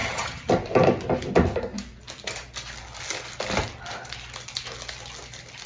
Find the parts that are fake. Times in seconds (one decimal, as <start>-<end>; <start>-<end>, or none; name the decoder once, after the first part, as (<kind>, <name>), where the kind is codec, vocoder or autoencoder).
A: 0.0-0.5 (vocoder, HiFi-GAN)